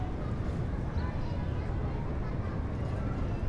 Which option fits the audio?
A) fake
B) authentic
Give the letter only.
B